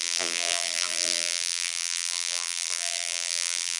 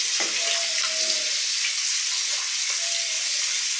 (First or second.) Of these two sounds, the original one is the second